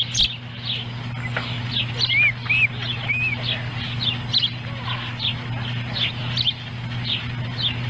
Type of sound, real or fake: real